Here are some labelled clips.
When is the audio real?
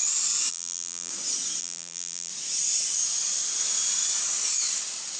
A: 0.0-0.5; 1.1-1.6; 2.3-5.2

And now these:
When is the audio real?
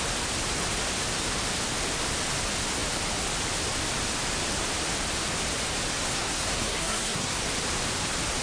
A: 0.0-6.1; 7.4-8.4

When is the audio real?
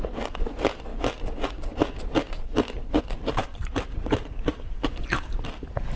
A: 0.9-3.0